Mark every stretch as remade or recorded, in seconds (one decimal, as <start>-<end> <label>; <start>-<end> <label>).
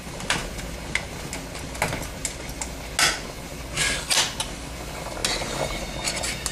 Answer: 0.0-6.5 recorded